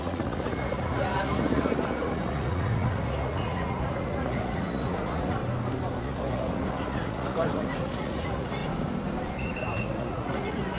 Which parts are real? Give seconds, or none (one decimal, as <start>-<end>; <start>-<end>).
5.4-6.0; 8.6-9.3